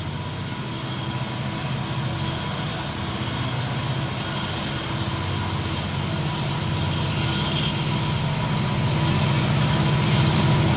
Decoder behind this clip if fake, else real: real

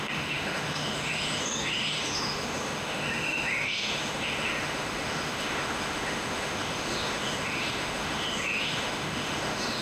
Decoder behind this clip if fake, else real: fake, autoencoder, DAC-VAE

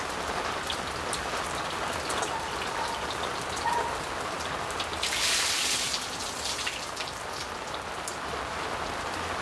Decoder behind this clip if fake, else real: real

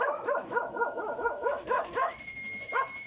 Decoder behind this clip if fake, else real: fake, autoencoder, DAC-VAE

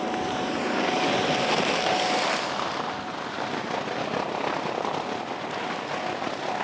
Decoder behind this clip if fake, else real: real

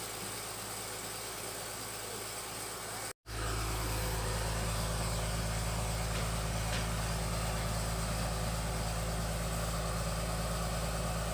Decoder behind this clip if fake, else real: real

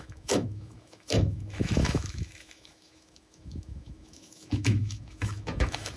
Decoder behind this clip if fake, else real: fake, autoencoder, DAC-VAE